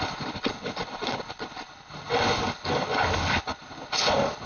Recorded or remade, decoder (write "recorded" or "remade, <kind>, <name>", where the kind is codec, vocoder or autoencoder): remade, codec, HILCodec